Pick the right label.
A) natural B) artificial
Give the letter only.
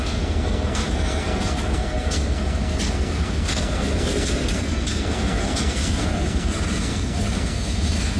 B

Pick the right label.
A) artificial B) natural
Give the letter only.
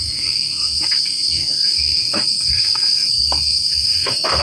A